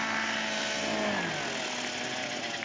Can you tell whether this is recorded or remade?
recorded